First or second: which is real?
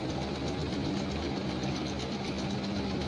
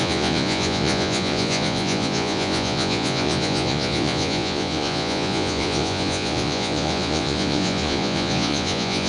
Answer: first